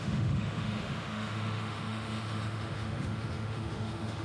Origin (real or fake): fake